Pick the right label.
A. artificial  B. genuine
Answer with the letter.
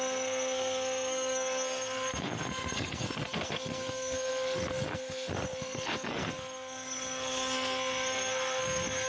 A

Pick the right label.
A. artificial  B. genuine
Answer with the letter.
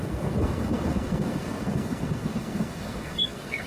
A